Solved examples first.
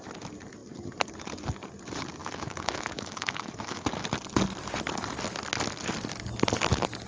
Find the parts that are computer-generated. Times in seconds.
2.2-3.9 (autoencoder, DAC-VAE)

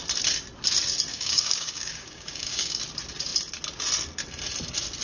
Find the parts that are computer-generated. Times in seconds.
1.1-2.8 (codec, DAC)

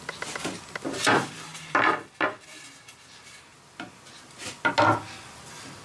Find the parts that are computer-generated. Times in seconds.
none

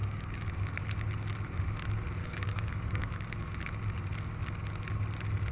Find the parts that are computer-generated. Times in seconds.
0.0-0.5 (codec, DAC); 2.2-3.5

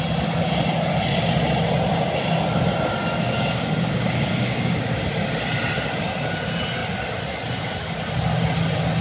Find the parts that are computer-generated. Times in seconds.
3.2-5.1 (codec, DAC)